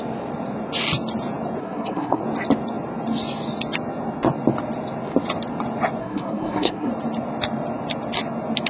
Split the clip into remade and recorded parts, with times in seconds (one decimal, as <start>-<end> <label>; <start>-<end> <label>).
0.0-1.6 recorded; 1.6-2.2 remade; 2.2-6.0 recorded; 6.0-6.9 remade; 6.9-8.7 recorded